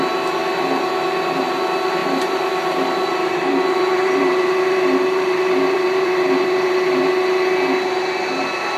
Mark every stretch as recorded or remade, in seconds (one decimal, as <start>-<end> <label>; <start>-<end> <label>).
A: 0.0-2.0 recorded; 2.0-7.1 remade; 7.1-8.8 recorded